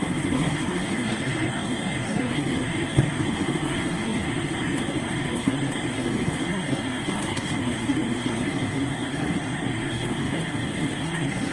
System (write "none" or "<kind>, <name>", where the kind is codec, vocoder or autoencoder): codec, SNAC